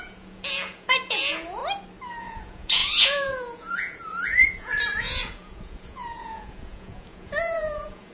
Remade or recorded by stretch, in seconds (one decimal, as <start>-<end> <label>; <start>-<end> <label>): 0.0-1.6 remade; 1.6-2.2 recorded; 2.2-8.1 remade